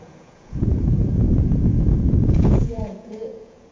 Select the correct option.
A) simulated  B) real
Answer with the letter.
A